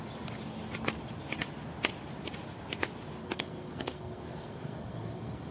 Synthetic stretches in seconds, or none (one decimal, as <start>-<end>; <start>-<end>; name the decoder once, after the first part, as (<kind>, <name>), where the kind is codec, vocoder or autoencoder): 3.2-5.5 (codec, SNAC)